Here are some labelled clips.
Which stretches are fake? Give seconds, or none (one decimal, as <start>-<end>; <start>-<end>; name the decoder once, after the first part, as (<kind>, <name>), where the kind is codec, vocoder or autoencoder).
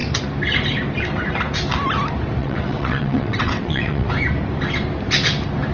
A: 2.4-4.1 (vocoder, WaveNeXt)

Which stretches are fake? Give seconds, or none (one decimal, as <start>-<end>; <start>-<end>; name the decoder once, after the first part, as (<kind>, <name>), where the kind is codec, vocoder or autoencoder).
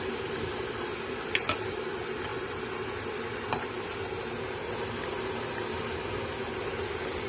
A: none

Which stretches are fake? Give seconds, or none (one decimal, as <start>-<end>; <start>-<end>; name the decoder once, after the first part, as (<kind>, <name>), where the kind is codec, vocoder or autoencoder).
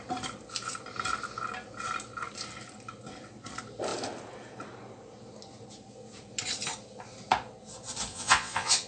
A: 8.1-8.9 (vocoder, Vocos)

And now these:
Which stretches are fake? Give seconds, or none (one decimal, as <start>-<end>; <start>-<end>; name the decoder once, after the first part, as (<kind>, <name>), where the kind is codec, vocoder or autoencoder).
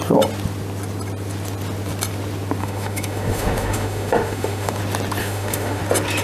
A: 2.6-4.8 (autoencoder, DAC-VAE); 5.2-5.8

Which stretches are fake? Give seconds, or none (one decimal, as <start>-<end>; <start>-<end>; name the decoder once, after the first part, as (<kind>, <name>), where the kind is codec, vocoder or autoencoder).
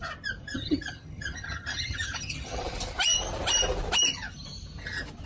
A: 0.5-2.6 (vocoder, HiFi-GAN)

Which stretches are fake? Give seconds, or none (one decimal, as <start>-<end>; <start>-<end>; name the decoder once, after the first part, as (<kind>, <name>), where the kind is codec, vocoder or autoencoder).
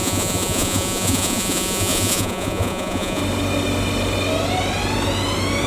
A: 0.0-3.2 (vocoder, Vocos)